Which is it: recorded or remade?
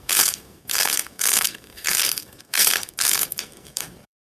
remade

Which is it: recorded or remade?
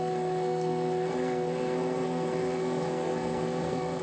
remade